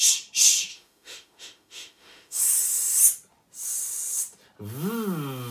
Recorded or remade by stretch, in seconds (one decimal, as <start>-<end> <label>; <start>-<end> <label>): 0.0-0.7 recorded; 0.7-2.4 remade; 2.4-5.5 recorded